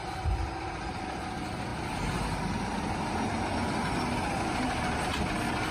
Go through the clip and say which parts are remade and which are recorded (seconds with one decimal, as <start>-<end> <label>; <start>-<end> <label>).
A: 0.0-5.7 recorded